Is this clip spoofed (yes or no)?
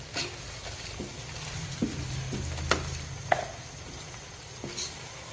no